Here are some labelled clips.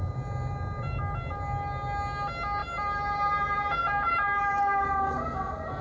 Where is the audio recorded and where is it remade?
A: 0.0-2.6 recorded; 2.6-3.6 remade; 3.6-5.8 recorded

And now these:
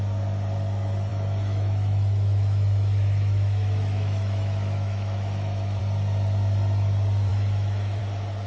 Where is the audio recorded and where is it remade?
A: 0.0-1.1 recorded; 1.1-5.8 remade; 5.8-7.3 recorded; 7.3-8.0 remade; 8.0-8.5 recorded

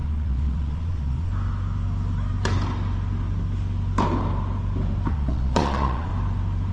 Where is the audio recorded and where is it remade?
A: 0.0-1.3 remade; 1.3-5.1 recorded; 5.1-6.1 remade; 6.1-6.7 recorded

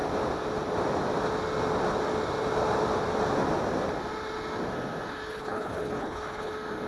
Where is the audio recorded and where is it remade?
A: 0.0-5.3 recorded; 5.3-6.5 remade; 6.5-6.9 recorded

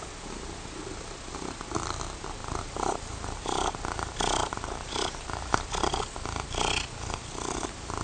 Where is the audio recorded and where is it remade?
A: 0.0-2.4 recorded; 2.4-3.8 remade; 3.8-4.4 recorded; 4.4-5.6 remade; 5.6-8.0 recorded